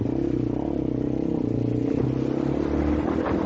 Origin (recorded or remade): recorded